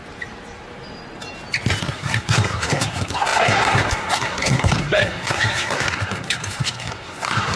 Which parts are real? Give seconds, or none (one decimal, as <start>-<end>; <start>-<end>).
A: 0.0-1.8